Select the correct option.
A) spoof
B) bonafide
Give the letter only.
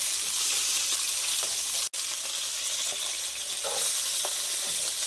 B